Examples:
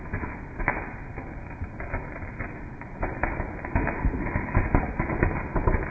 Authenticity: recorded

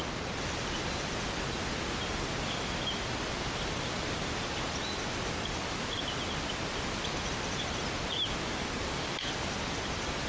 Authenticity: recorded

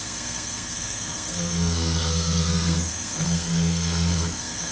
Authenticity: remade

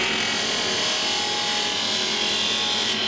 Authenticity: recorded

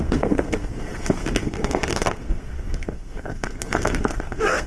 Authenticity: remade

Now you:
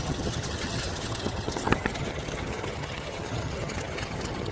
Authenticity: remade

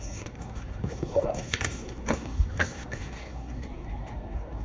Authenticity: remade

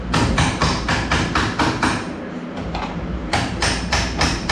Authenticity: remade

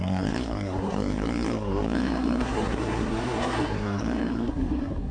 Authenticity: remade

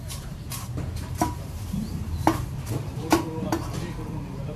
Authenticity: remade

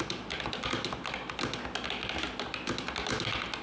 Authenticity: recorded